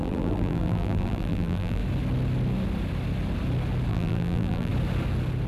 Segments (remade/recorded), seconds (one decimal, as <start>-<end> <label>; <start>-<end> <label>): 0.0-1.8 remade; 1.8-3.9 recorded; 3.9-4.7 remade; 4.7-5.5 recorded